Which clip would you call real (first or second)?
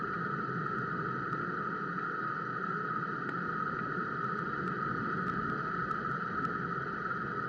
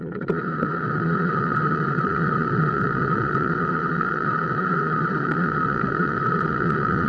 first